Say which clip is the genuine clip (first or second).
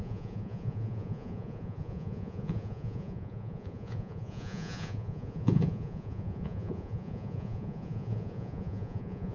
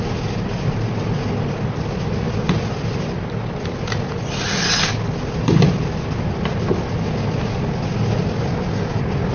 second